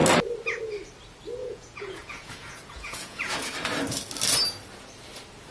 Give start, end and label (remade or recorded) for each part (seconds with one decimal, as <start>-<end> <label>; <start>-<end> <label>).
0.0-1.4 recorded; 1.4-3.5 remade; 3.5-5.5 recorded